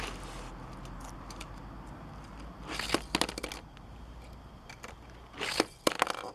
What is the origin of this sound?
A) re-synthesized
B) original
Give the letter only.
B